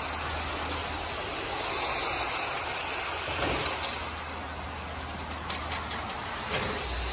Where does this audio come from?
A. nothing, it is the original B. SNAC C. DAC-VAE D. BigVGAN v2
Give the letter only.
A